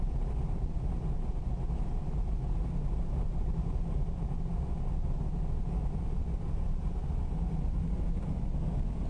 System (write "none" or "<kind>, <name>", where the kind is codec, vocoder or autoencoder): none